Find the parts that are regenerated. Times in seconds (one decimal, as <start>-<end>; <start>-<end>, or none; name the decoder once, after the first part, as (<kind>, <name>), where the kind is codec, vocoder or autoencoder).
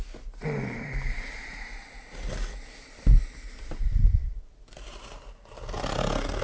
none